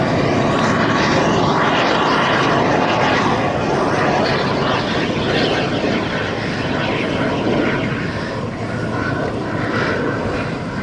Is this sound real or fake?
real